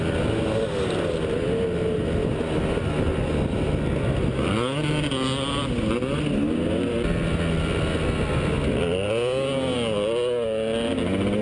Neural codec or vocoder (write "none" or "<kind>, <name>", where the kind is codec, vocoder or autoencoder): none